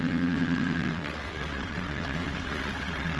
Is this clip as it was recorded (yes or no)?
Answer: no